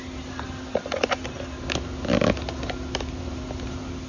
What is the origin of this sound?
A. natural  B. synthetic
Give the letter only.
A